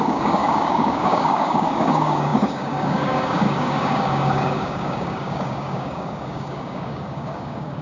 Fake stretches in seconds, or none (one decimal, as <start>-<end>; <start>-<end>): 0.0-7.8